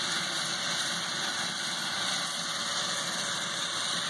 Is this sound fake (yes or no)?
no